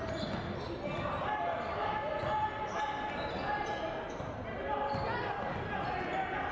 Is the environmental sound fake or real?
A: real